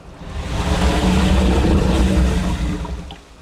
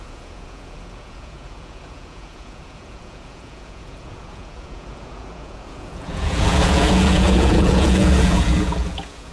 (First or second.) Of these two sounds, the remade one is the second